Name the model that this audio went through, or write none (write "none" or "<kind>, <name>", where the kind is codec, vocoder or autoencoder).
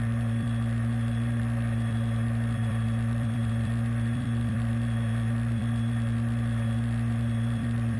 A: vocoder, BigVGAN v2